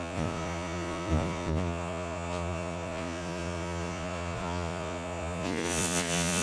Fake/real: fake